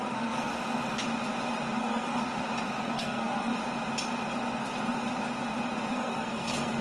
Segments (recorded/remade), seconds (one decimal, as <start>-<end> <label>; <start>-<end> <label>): 0.0-0.5 remade; 0.5-1.8 recorded; 1.8-2.2 remade; 2.2-2.8 recorded; 2.8-3.5 remade; 3.5-5.9 recorded; 5.9-6.8 remade